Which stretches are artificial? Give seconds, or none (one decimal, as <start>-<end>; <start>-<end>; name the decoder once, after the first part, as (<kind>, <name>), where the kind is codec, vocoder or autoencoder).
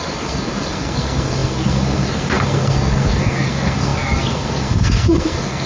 0.0-5.7 (codec, SNAC)